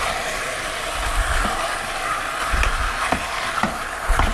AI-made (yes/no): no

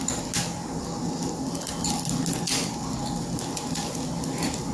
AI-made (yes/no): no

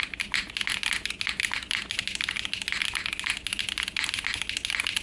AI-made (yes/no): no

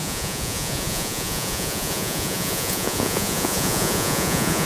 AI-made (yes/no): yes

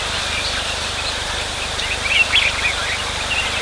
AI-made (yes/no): yes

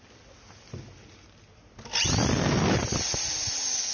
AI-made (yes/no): no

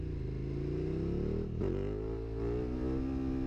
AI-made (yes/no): no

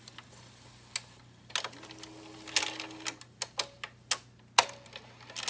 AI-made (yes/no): no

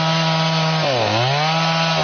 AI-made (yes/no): no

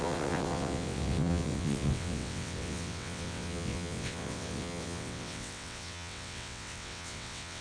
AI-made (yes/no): yes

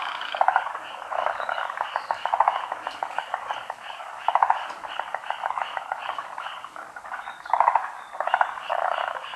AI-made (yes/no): yes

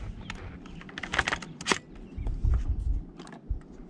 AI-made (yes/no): no